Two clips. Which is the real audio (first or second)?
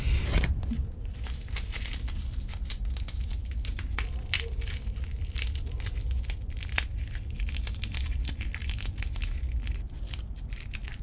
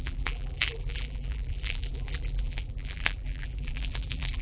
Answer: first